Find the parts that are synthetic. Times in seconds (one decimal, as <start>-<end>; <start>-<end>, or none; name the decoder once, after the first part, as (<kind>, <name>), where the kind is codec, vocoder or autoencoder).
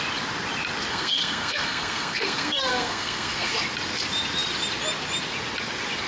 0.9-3.5 (codec, SNAC)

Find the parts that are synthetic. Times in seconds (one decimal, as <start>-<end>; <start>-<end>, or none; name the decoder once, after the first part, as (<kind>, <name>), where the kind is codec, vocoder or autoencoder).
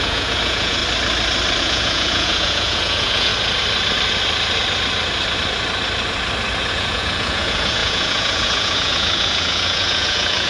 0.0-0.8 (vocoder, Vocos); 1.6-3.3; 6.7-10.5